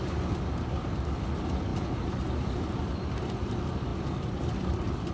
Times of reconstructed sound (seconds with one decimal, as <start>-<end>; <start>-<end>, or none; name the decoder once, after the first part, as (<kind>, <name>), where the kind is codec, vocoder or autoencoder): none